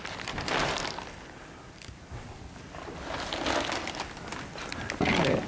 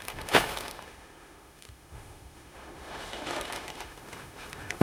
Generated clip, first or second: second